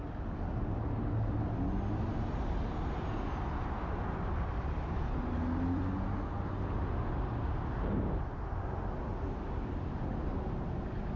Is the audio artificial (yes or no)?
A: no